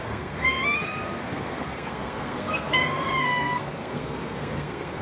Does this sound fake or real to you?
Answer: fake